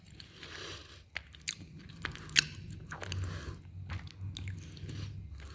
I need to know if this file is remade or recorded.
recorded